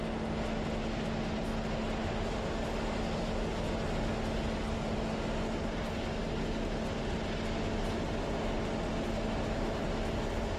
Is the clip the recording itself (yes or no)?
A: yes